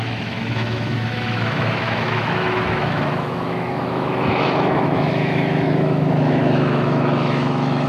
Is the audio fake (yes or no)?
yes